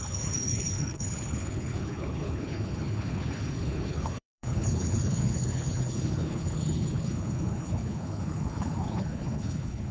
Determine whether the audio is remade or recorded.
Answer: remade